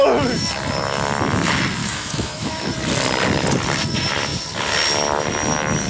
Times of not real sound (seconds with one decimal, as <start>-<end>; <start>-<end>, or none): 1.8-2.7